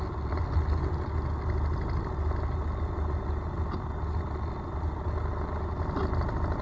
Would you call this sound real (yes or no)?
yes